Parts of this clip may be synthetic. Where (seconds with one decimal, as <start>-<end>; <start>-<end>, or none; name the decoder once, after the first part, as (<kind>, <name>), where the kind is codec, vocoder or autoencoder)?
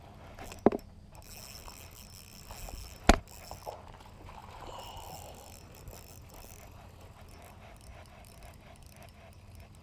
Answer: none